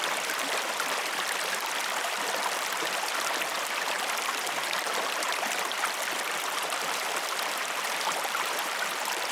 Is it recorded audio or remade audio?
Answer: remade